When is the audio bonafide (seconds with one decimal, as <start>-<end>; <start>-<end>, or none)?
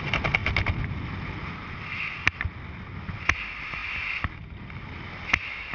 0.0-5.7